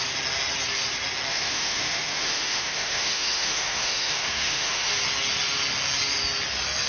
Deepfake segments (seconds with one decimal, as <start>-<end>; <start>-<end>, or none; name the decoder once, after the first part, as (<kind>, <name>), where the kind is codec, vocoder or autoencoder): 1.3-4.9 (autoencoder, DAC-VAE)